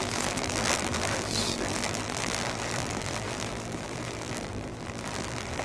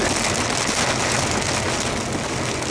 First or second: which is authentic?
second